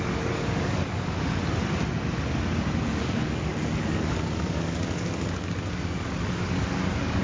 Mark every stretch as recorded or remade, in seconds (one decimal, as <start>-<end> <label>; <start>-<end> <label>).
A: 0.0-1.4 remade; 1.4-2.9 recorded; 2.9-7.2 remade